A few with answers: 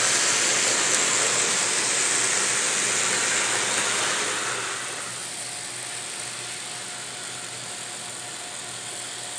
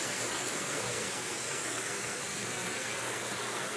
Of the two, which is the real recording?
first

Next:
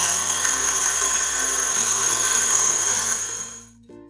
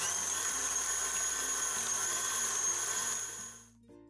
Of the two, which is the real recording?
second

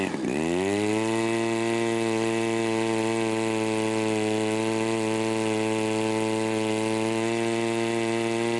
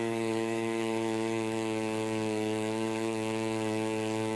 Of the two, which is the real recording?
first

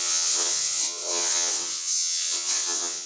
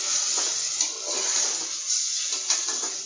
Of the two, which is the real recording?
second